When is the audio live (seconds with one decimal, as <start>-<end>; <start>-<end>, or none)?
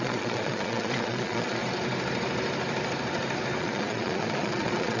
1.6-3.6